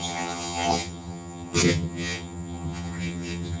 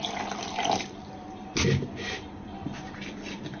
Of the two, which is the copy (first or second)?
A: first